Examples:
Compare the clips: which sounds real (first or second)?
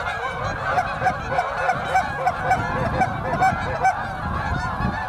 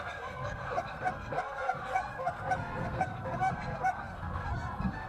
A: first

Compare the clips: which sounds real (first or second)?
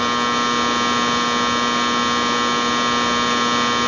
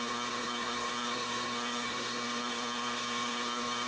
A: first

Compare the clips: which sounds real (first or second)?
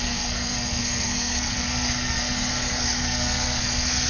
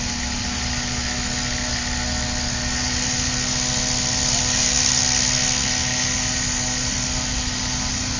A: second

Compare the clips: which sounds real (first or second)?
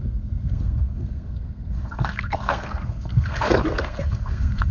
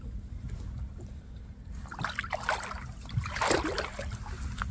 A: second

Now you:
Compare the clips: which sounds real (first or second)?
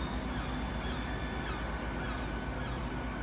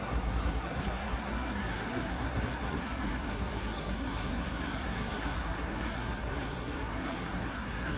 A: first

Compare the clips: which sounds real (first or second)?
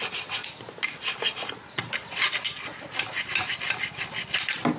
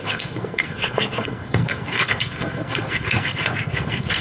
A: first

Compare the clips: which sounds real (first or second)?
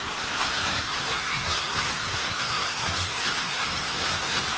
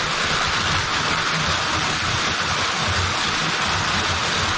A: second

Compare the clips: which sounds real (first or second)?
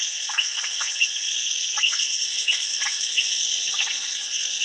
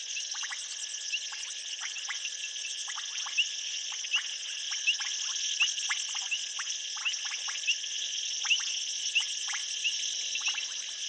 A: second